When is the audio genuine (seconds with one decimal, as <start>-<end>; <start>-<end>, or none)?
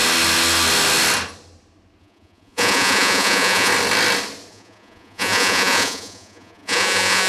0.0-2.0; 3.7-4.5